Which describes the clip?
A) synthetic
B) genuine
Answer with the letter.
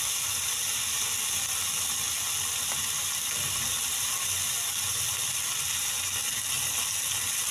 B